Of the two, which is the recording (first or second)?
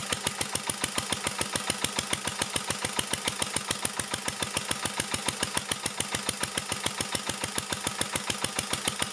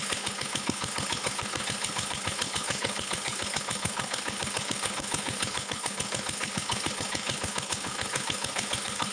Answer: first